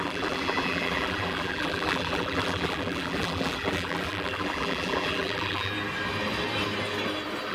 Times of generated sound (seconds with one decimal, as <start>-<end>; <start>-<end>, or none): 0.0-5.7